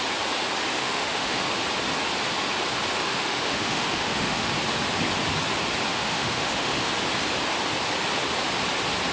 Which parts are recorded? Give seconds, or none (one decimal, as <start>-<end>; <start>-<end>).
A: 0.0-0.7; 1.4-3.0; 4.5-5.9; 6.9-9.1